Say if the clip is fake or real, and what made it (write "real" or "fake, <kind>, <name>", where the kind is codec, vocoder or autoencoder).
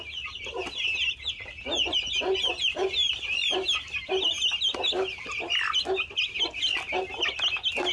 real